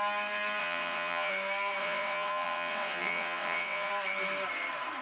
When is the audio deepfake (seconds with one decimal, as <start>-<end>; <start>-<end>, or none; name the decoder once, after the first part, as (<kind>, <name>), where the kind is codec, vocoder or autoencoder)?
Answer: 0.6-1.3 (vocoder, WaveNeXt); 1.8-3.9